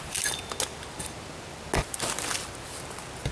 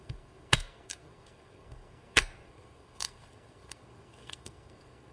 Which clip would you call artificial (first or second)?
second